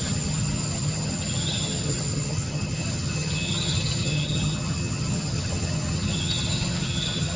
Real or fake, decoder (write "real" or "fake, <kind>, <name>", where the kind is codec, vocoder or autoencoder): fake, vocoder, HiFi-GAN